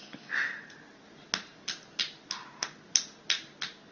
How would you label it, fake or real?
real